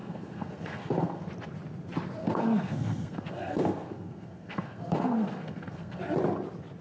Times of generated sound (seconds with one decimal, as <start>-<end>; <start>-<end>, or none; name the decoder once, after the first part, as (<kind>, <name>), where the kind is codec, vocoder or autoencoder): 0.0-1.3 (codec, SNAC); 2.2-6.0